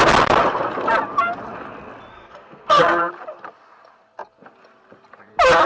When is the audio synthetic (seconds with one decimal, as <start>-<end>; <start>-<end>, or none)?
2.1-3.1